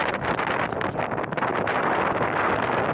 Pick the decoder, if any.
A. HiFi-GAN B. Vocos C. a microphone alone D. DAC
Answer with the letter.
C